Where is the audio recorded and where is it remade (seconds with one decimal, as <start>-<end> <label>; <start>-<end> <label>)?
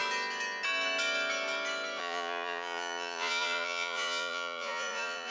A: 0.0-2.0 recorded; 2.0-5.3 remade